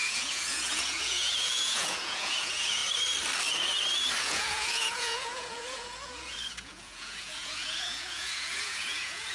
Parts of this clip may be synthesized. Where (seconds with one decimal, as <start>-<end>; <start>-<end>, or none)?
0.0-2.8; 4.2-9.3